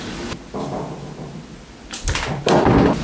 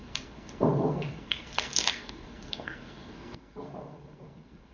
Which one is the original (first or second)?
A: first